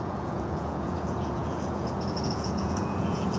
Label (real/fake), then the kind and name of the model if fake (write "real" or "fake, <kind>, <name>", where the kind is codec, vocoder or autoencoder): fake, vocoder, Vocos